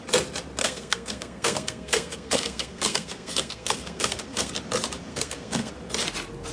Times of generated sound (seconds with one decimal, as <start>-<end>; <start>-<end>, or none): 0.6-4.5; 5.1-5.7